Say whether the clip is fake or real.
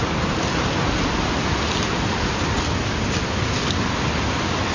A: real